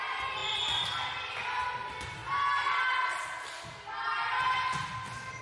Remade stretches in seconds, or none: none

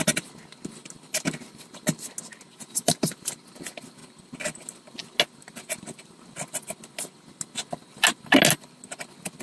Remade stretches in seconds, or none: 2.5-3.1 (vocoder, BigVGAN v2)